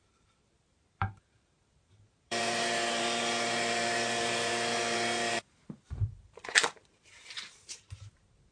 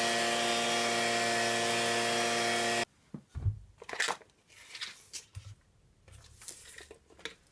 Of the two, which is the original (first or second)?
second